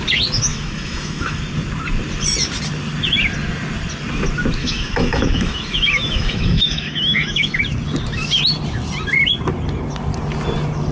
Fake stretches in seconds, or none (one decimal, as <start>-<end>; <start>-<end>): 0.5-1.4; 4.6-7.6